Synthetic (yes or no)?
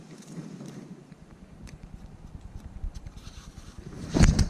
yes